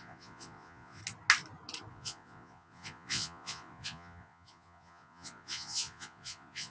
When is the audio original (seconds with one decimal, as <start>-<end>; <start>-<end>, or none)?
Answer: 1.0-1.9